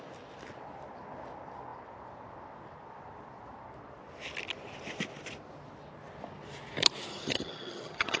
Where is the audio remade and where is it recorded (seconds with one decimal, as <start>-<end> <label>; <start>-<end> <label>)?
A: 0.0-7.1 recorded; 7.1-8.2 remade

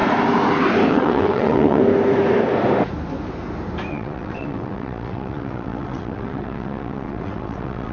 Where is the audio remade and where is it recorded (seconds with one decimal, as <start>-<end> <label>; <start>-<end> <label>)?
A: 0.0-0.9 recorded; 0.9-1.8 remade; 1.8-3.9 recorded; 3.9-7.9 remade